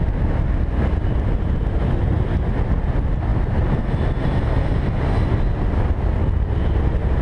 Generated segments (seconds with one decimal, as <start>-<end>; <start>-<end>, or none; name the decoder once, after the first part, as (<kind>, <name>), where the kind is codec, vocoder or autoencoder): none